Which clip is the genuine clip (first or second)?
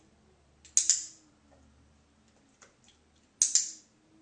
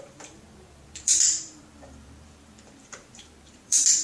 first